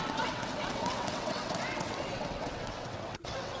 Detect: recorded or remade remade